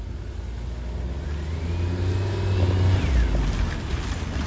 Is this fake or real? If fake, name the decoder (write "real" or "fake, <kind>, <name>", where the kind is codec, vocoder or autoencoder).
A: real